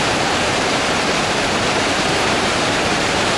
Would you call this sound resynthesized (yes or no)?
yes